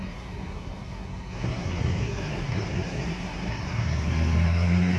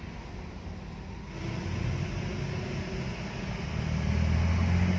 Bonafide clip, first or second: second